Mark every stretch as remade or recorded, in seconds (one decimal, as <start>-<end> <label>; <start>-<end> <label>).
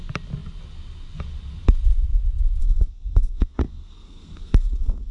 0.0-2.6 recorded; 2.6-5.1 remade